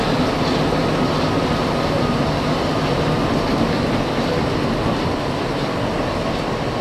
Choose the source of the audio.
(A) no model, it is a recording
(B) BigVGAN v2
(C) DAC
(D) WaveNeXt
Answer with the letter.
A